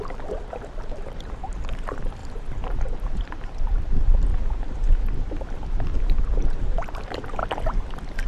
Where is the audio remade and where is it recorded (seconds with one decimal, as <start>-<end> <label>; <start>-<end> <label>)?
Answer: 0.0-4.3 remade; 4.3-6.2 recorded; 6.2-7.4 remade; 7.4-8.3 recorded